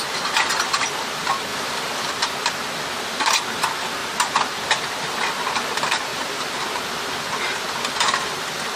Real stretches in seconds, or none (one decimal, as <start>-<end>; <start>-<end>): 0.0-8.8